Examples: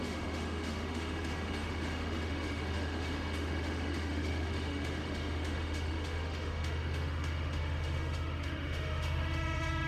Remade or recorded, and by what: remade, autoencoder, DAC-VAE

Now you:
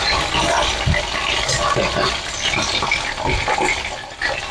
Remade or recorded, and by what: recorded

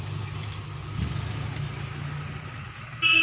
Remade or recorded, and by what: recorded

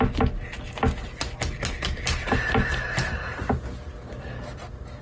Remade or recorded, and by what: recorded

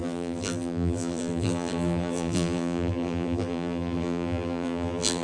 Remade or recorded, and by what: remade, vocoder, BigVGAN v2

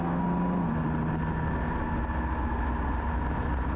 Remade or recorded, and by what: recorded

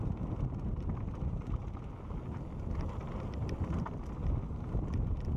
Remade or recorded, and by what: recorded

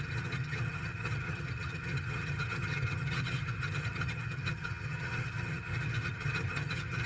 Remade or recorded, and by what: remade, vocoder, HiFi-GAN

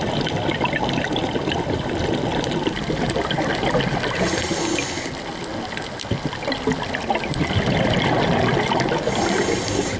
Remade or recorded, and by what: recorded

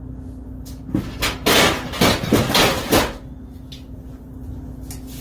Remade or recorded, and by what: recorded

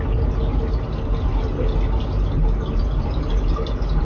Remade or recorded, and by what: recorded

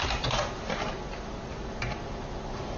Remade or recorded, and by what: remade, vocoder, BigVGAN v2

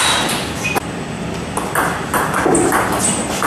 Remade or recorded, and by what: recorded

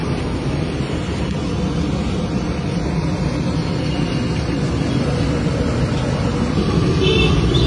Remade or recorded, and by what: recorded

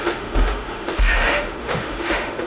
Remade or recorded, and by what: remade, autoencoder, DAC-VAE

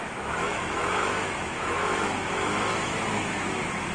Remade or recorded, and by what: remade, autoencoder, DAC-VAE